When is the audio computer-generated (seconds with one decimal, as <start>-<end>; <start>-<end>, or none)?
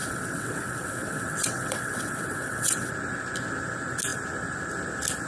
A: 0.0-2.9